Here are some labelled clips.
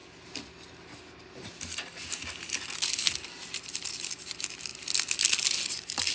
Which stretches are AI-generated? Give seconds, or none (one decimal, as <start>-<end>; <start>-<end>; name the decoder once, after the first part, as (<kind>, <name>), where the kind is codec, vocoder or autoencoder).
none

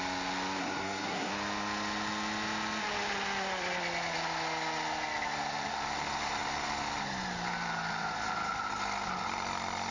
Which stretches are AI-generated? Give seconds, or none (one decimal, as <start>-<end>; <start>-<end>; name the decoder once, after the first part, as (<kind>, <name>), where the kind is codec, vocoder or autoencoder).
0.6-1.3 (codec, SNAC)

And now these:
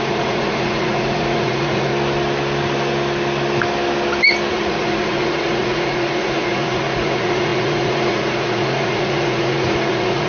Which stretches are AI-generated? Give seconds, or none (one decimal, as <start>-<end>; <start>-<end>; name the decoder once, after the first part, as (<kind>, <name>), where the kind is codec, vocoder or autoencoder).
0.0-1.9 (vocoder, Vocos); 4.5-10.3

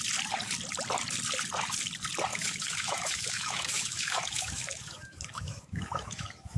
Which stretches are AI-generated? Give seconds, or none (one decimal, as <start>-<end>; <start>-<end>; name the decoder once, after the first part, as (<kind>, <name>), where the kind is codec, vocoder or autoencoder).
2.3-6.6 (autoencoder, DAC-VAE)

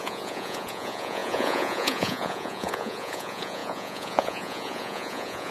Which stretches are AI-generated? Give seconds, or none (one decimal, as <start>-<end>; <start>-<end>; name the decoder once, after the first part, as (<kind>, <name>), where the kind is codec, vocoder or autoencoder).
0.0-5.5 (vocoder, Vocos)

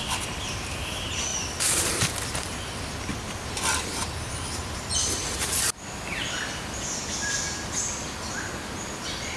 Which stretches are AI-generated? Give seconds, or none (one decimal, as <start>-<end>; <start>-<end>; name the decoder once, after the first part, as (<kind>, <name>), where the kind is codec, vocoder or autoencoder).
1.3-2.0 (vocoder, BigVGAN v2); 5.0-7.0